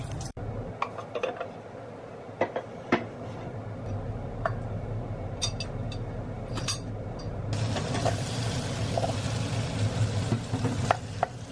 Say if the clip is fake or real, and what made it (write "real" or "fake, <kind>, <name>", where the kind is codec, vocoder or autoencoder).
real